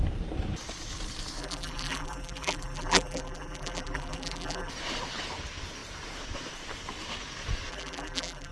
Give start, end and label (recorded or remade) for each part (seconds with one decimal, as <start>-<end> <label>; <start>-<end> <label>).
0.0-1.4 recorded; 1.4-4.7 remade; 4.7-7.7 recorded; 7.7-8.5 remade